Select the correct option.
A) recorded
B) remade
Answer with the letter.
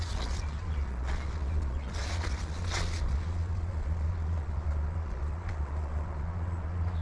B